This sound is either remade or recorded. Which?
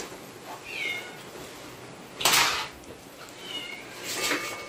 recorded